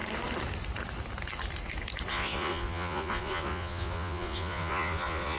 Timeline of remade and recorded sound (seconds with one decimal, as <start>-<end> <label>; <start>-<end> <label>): 0.0-2.1 recorded; 2.1-5.4 remade